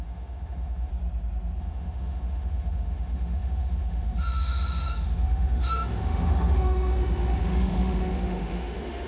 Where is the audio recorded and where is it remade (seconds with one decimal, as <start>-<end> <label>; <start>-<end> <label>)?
0.0-0.9 remade; 0.9-1.6 recorded; 1.6-9.1 remade